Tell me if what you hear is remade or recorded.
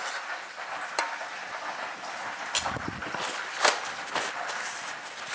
recorded